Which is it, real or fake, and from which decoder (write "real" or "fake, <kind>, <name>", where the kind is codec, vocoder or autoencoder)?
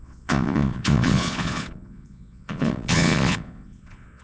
fake, vocoder, Vocos